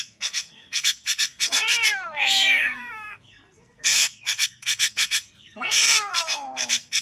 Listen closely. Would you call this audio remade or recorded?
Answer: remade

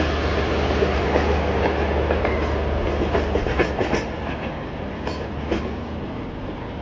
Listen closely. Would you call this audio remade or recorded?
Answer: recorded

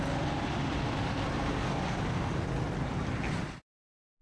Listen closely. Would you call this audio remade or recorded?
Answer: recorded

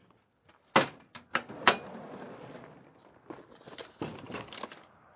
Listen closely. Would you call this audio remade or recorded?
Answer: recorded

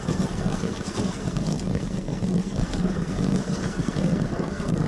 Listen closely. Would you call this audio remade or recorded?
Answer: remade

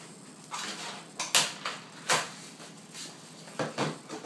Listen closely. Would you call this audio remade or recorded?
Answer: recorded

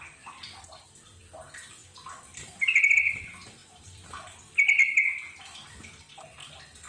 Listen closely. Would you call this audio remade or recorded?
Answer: recorded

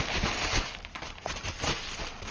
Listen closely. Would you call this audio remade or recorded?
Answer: recorded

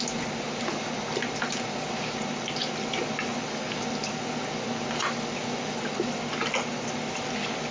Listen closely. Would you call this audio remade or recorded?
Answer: recorded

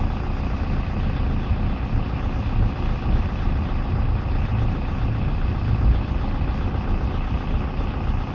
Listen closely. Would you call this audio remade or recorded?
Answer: recorded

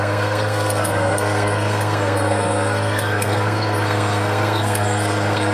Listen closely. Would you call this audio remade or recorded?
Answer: remade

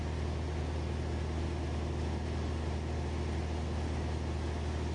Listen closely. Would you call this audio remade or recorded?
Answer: recorded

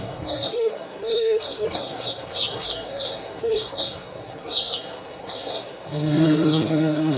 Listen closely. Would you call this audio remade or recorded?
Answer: remade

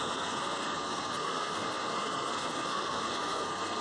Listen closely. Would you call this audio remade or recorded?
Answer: remade